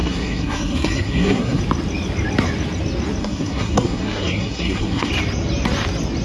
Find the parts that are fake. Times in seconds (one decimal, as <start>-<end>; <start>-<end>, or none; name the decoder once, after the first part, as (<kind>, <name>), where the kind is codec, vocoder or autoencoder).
0.0-1.6 (codec, SNAC); 3.2-5.1